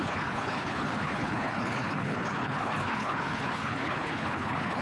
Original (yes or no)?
no